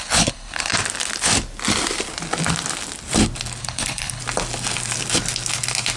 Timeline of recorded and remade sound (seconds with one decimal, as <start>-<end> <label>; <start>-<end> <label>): 0.0-0.7 remade; 0.7-3.6 recorded; 3.6-4.2 remade; 4.2-6.0 recorded